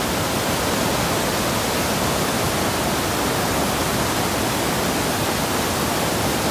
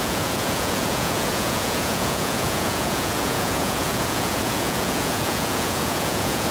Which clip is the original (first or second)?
first